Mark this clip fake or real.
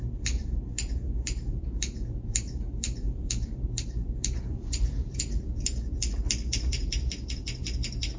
fake